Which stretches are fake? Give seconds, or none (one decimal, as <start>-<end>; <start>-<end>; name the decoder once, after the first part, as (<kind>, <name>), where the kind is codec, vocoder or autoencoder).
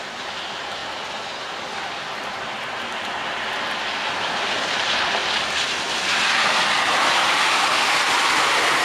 7.4-7.9 (autoencoder, DAC-VAE)